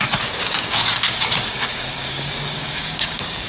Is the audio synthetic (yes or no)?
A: yes